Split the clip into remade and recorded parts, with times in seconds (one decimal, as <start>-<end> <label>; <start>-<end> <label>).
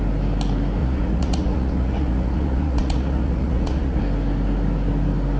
0.0-0.8 recorded; 0.8-4.0 remade; 4.0-5.4 recorded